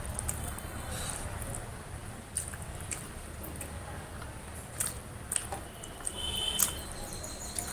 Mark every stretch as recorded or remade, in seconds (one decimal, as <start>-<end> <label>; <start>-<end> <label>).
0.0-0.4 recorded; 0.4-0.9 remade; 0.9-7.7 recorded

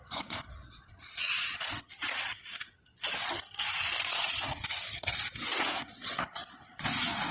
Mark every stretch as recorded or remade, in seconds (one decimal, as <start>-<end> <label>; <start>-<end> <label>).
0.0-3.4 remade; 3.4-4.0 recorded; 4.0-7.3 remade

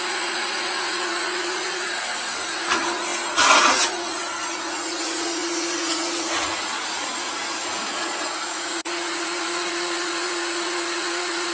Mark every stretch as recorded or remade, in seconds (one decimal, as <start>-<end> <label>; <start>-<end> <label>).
0.0-3.1 remade; 3.1-3.6 recorded; 3.6-11.5 remade